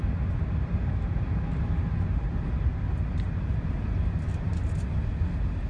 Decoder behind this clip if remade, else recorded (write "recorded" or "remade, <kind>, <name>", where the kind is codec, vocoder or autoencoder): recorded